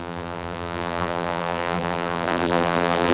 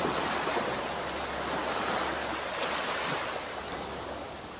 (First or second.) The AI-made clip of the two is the first